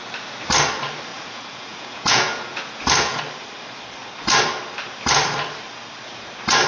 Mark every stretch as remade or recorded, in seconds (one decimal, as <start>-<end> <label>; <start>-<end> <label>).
0.0-1.1 recorded; 1.1-3.2 remade; 3.2-6.7 recorded